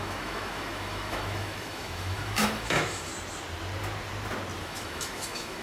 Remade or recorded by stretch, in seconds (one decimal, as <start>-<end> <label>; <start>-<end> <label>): 0.0-3.1 remade; 3.1-4.6 recorded; 4.6-5.6 remade